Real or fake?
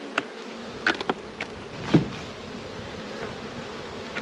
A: real